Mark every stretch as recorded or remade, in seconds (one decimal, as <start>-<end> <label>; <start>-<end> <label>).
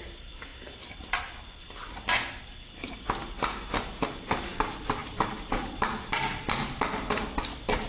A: 0.0-5.0 recorded; 5.0-7.3 remade; 7.3-7.9 recorded